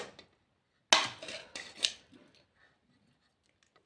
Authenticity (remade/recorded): recorded